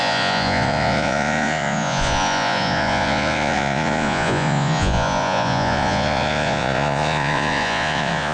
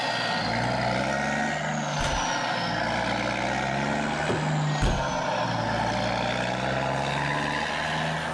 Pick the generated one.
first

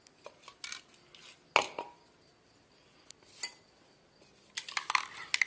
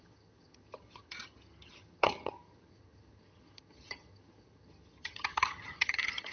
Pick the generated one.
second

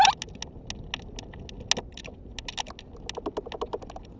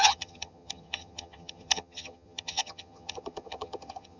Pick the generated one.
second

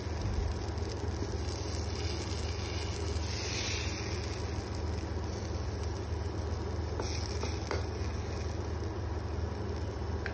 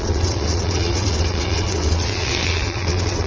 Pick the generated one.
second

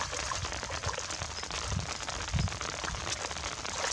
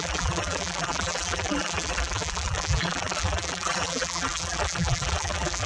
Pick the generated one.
second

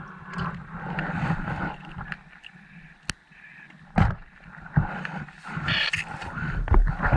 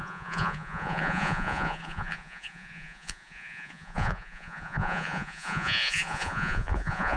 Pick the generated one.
second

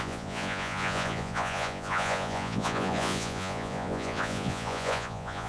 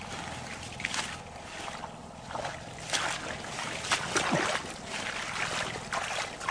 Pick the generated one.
first